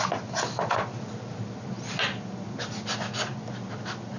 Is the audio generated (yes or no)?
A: no